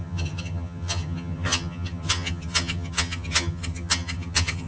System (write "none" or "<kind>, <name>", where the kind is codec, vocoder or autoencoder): vocoder, HiFi-GAN